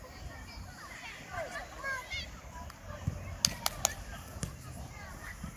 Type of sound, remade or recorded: recorded